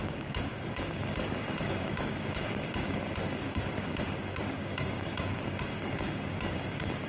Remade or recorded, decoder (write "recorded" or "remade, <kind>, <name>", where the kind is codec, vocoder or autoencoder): remade, codec, DAC